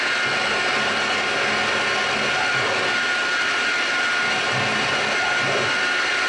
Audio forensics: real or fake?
real